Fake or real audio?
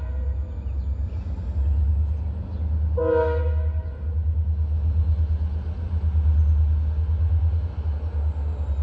real